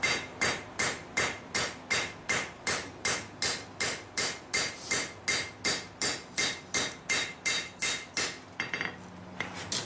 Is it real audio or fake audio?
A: real